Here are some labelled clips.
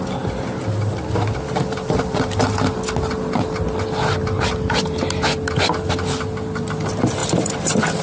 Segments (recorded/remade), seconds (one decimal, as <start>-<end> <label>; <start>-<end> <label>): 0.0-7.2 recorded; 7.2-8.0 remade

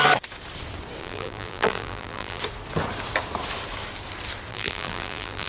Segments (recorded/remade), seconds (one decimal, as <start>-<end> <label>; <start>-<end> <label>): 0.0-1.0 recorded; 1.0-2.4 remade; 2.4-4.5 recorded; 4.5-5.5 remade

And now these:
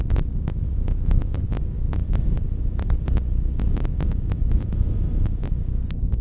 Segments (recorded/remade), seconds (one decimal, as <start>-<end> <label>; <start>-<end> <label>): 0.0-2.0 remade; 2.0-5.7 recorded; 5.7-6.2 remade

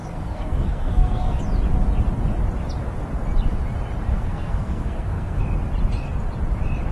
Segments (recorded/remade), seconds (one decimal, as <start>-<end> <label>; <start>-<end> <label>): 0.0-1.4 remade; 1.4-4.1 recorded; 4.1-5.4 remade; 5.4-6.9 recorded

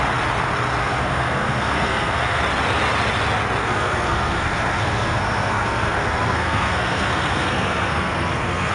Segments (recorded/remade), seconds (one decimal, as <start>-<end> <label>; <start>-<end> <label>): 0.0-0.8 recorded; 0.8-2.4 remade; 2.4-3.6 recorded; 3.6-8.7 remade

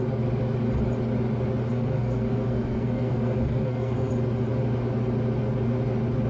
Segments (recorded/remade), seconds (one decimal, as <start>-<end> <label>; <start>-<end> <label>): 0.0-1.7 recorded; 1.7-4.1 remade; 4.1-6.3 recorded